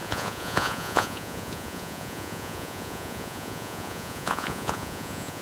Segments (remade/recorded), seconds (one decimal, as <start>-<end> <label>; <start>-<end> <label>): 0.0-5.4 remade